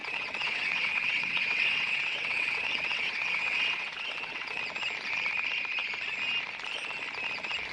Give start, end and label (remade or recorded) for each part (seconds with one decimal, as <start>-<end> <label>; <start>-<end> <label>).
0.0-4.6 remade; 4.6-7.7 recorded